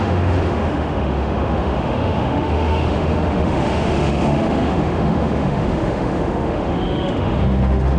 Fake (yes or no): yes